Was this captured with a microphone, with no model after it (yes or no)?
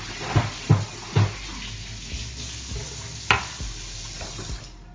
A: yes